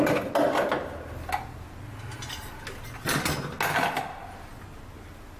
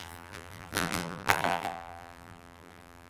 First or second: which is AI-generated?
second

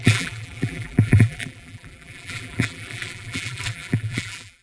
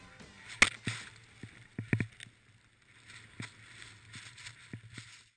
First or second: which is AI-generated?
first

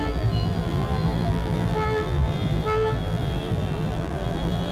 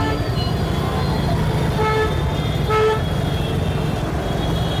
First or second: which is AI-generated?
first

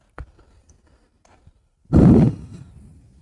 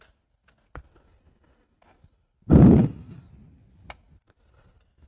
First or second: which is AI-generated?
first